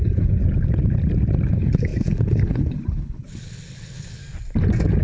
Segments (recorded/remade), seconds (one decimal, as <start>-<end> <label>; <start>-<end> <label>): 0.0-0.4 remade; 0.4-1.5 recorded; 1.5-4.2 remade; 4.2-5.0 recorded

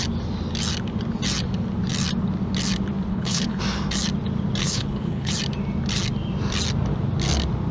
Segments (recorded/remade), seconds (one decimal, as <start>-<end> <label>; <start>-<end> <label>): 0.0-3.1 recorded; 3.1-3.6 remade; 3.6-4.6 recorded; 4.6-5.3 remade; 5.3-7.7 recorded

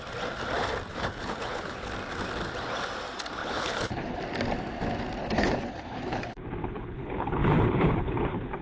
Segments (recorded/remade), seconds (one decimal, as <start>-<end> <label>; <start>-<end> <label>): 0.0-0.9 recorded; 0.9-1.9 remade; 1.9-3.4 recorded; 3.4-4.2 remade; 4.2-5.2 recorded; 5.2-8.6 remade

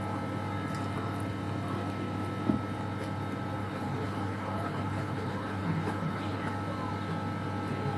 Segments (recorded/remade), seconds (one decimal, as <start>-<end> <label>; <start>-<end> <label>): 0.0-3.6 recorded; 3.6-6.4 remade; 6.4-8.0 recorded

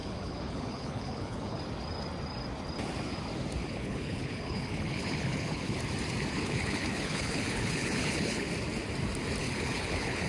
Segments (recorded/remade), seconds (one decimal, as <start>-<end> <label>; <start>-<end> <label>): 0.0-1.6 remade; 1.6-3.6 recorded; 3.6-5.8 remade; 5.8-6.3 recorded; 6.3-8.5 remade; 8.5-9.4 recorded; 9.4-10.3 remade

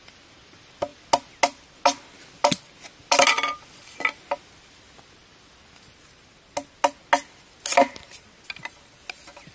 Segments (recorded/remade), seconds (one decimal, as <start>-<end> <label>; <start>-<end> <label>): 0.0-9.5 recorded

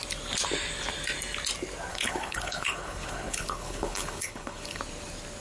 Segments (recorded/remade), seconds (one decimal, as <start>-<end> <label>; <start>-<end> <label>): 0.0-1.9 recorded; 1.9-4.8 remade; 4.8-5.4 recorded

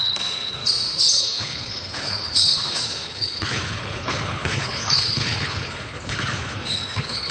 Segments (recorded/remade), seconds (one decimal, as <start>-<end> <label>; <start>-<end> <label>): 0.0-0.6 remade; 0.6-1.1 recorded; 1.1-7.3 remade